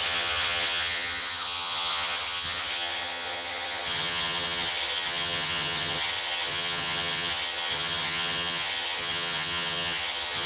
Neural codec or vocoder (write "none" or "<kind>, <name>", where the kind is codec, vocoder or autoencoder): vocoder, HiFi-GAN